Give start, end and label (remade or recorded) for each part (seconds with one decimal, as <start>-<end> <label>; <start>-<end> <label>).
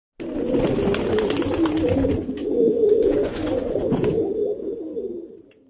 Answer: 0.0-2.4 recorded; 2.4-4.1 remade; 4.1-5.7 recorded